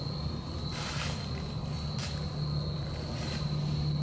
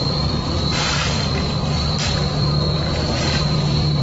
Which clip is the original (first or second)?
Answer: first